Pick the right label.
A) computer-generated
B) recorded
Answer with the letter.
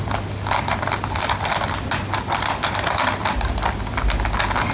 B